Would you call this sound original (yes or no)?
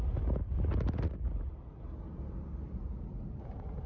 yes